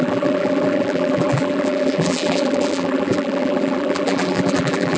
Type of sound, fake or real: fake